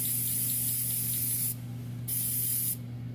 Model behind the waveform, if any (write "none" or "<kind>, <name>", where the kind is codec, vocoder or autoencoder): none